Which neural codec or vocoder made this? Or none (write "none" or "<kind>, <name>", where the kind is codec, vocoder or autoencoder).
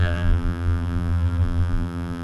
vocoder, BigVGAN v2